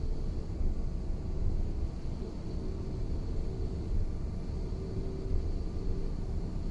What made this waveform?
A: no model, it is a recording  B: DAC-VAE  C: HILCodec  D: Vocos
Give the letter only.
A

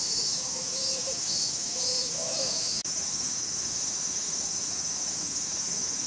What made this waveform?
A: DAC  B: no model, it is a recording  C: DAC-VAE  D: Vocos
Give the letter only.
C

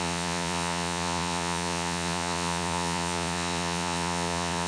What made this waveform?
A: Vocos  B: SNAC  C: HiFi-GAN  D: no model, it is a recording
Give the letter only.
A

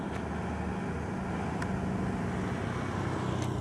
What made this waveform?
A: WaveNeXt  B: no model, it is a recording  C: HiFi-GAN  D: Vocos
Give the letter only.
B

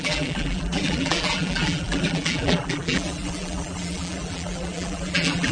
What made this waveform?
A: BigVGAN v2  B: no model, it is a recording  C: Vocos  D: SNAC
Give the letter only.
A